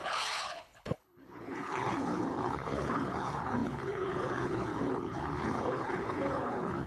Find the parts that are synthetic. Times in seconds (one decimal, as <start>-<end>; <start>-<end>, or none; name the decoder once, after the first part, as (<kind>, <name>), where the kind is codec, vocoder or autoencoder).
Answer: 0.0-6.9 (codec, HILCodec)